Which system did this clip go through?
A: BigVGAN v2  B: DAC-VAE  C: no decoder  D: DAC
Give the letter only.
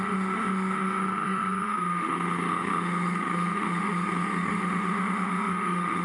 B